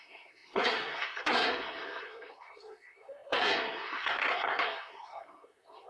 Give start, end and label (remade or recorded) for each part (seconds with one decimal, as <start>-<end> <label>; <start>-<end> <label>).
0.0-5.9 remade